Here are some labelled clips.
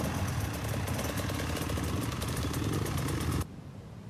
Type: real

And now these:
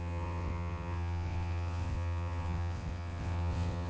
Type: fake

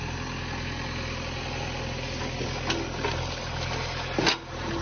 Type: real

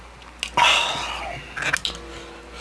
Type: real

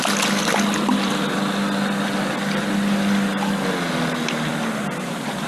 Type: real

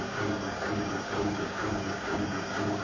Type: fake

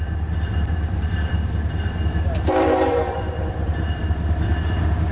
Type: fake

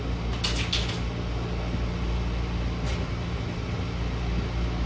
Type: real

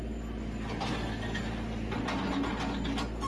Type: real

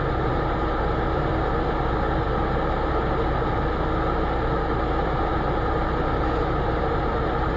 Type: real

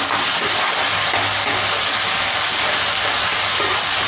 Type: real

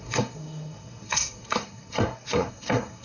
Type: fake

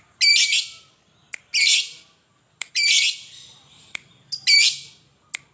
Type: real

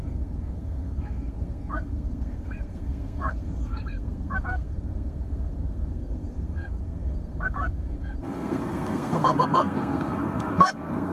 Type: fake